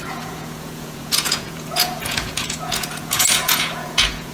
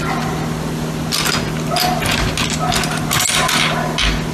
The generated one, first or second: first